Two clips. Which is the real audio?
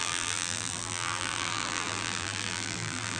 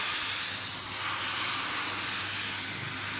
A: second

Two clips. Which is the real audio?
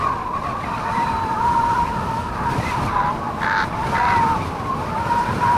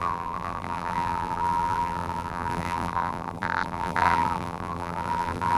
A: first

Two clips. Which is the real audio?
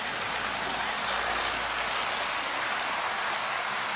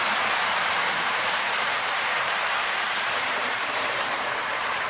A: first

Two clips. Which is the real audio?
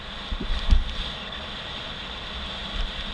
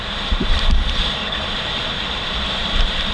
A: first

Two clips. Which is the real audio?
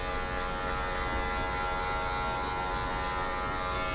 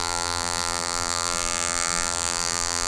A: first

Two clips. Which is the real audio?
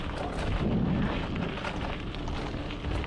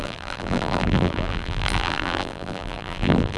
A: first